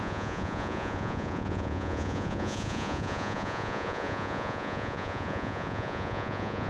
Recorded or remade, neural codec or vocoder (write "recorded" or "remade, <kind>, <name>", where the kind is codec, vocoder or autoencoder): remade, vocoder, Vocos